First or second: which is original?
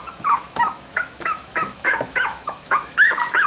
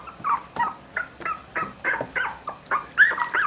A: second